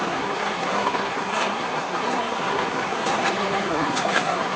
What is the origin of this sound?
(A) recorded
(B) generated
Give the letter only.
B